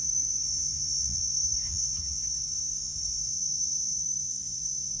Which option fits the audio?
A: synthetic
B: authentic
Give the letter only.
A